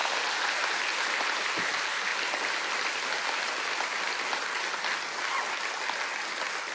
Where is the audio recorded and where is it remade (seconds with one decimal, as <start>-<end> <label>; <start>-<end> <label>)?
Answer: 0.0-6.7 recorded